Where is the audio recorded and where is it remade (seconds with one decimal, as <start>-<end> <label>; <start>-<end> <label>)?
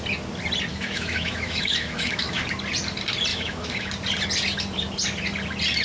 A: 0.0-0.7 recorded; 0.7-2.4 remade; 2.4-3.3 recorded; 3.3-3.9 remade; 3.9-5.8 recorded